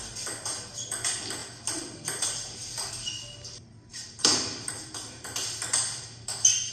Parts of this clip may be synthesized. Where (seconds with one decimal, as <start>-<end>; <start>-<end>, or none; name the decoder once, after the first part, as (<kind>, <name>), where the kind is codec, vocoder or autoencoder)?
1.4-2.9 (vocoder, BigVGAN v2)